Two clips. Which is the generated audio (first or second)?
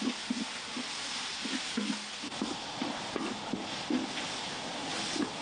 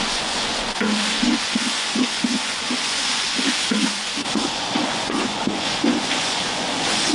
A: second